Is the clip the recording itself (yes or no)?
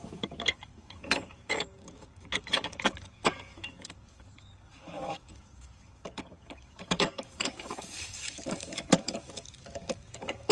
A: no